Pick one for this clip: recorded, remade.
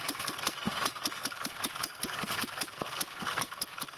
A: remade